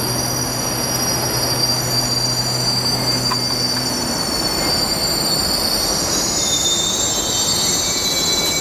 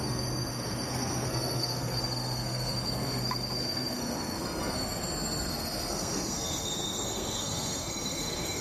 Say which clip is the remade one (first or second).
second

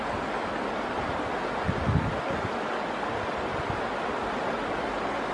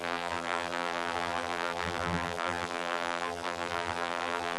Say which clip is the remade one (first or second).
second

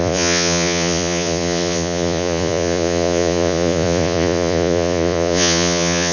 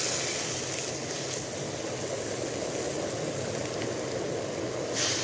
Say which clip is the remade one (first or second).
first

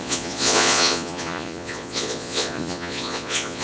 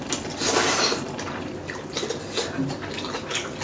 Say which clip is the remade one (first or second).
first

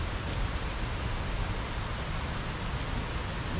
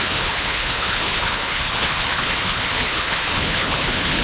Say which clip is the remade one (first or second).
second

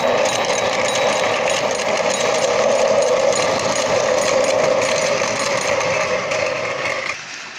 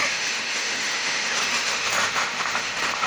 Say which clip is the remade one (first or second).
second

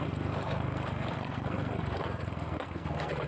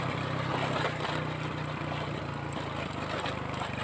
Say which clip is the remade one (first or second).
first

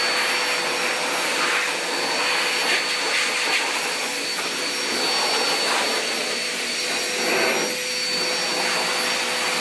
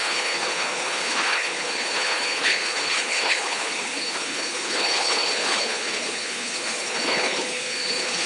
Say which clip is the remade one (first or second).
second